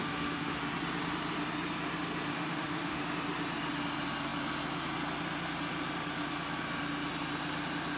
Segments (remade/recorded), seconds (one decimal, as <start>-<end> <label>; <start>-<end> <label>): 0.0-0.6 remade; 0.6-2.3 recorded; 2.3-3.0 remade; 3.0-8.0 recorded